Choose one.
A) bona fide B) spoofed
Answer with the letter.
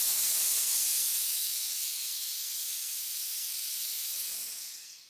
B